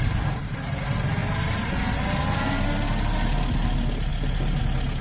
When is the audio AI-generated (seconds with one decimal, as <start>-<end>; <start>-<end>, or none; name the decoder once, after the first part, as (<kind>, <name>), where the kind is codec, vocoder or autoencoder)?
none

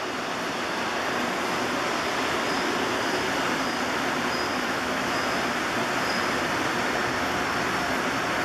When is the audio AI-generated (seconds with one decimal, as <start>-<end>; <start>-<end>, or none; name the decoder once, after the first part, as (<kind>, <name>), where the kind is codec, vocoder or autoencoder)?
4.5-5.2 (autoencoder, DAC-VAE)

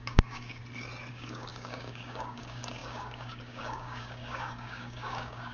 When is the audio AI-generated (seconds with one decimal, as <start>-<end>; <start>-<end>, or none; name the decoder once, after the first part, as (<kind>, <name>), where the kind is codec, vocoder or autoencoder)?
0.0-0.6 (codec, DAC); 1.1-5.5